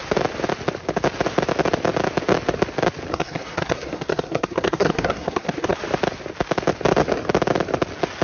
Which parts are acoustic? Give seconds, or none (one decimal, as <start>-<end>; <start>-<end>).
0.0-3.1; 5.8-8.2